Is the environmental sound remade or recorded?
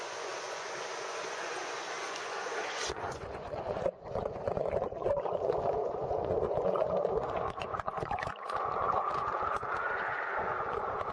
remade